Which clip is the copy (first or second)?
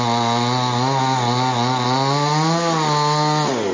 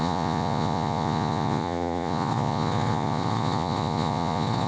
second